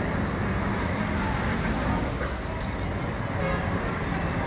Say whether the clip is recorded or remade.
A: recorded